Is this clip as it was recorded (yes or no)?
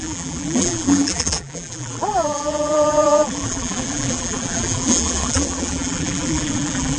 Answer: no